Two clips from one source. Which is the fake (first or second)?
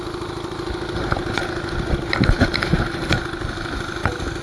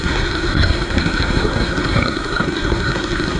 second